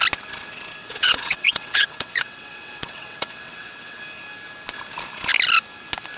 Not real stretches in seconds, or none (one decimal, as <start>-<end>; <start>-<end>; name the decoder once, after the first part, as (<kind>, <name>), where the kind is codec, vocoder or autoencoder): 0.8-4.0 (vocoder, WaveNeXt)